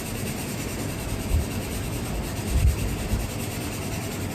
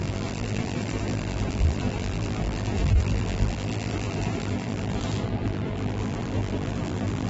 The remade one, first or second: second